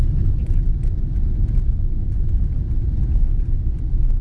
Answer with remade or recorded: recorded